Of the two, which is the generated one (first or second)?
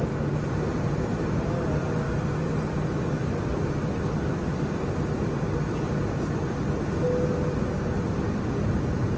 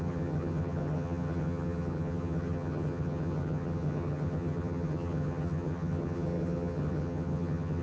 second